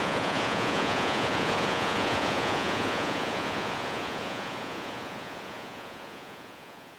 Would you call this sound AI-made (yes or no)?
yes